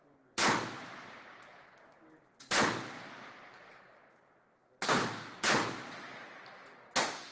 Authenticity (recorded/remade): recorded